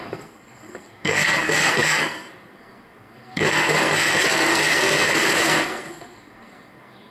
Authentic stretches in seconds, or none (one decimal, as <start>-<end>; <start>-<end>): none